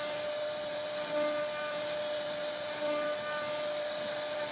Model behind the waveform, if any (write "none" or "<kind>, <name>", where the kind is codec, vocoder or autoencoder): none